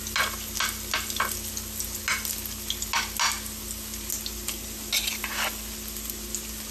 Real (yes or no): yes